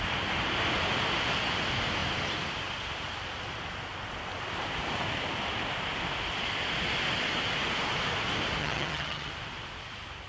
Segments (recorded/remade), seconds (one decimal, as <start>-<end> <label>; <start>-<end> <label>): 0.0-8.6 recorded; 8.6-9.3 remade; 9.3-10.3 recorded